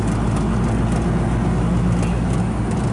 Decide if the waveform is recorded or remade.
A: recorded